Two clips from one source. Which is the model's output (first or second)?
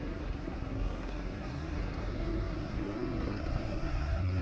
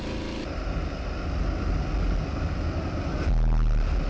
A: first